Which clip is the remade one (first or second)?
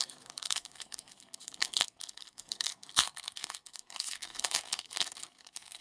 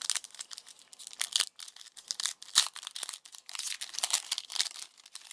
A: first